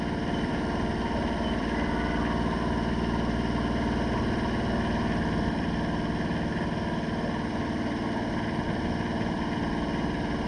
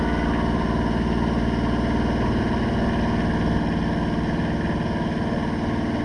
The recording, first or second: second